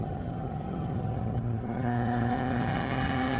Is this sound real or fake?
fake